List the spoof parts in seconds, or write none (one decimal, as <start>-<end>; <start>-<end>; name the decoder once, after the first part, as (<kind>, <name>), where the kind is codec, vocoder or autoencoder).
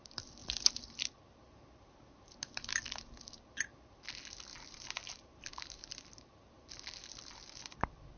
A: 4.5-6.7 (vocoder, BigVGAN v2)